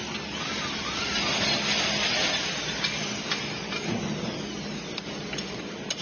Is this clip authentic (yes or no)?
yes